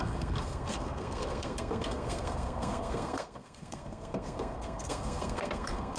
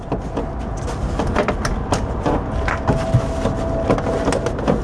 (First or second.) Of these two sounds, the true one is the second